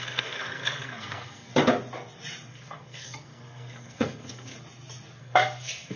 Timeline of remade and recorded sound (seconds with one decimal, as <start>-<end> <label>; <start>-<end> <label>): 0.0-1.5 remade; 1.5-2.5 recorded; 2.5-4.5 remade; 4.5-5.2 recorded; 5.2-6.0 remade